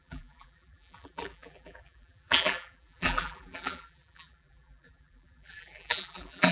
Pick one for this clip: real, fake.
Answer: fake